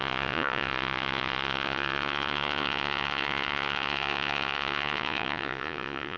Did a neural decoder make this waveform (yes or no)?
yes